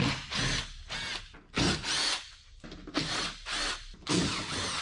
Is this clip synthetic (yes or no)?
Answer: no